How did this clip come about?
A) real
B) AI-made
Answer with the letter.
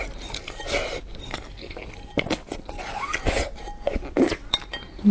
A